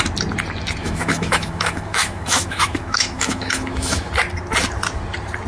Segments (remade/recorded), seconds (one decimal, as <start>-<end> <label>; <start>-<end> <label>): 0.0-0.8 recorded; 0.8-4.1 remade; 4.1-5.5 recorded